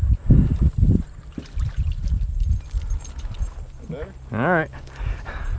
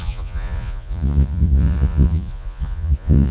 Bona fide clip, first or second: first